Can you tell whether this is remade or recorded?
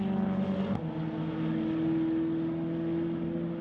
recorded